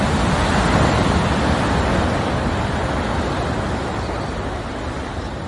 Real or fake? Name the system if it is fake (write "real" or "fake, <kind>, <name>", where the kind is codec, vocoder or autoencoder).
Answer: real